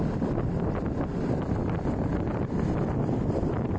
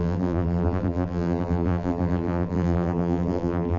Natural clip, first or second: first